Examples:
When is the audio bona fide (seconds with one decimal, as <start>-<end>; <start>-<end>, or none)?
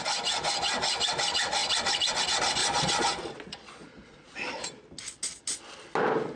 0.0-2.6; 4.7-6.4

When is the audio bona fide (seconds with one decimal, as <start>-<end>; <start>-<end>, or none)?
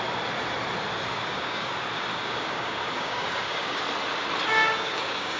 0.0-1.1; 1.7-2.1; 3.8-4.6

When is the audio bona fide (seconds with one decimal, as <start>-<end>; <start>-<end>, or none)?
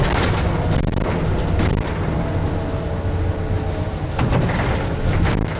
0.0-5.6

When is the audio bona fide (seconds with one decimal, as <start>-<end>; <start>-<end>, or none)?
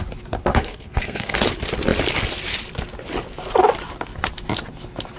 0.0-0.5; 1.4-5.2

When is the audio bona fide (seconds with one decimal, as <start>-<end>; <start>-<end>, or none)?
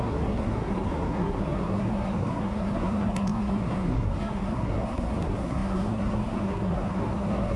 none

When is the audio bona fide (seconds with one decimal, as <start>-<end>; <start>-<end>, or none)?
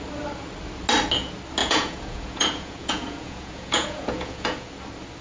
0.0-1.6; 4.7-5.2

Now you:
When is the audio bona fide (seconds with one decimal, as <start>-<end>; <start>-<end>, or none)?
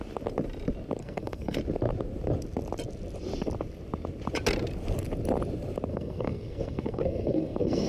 0.0-1.0; 1.6-5.9